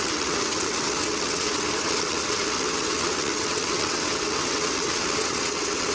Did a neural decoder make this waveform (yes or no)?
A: yes